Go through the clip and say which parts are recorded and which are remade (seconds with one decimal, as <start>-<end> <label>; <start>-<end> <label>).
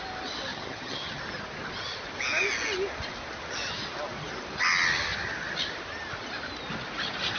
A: 0.0-0.5 recorded; 0.5-1.2 remade; 1.2-7.4 recorded